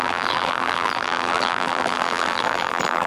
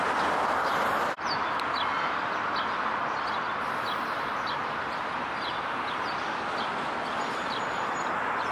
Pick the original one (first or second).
second